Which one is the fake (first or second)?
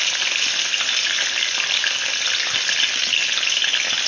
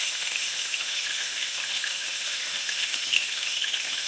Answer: second